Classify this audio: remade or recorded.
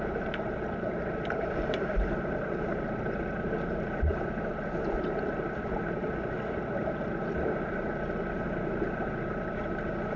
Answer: remade